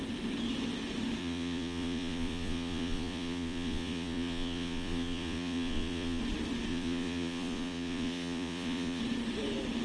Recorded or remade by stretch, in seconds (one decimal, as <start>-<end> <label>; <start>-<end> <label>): 0.0-1.2 recorded; 1.2-6.2 remade; 6.2-6.7 recorded; 6.7-9.0 remade; 9.0-9.8 recorded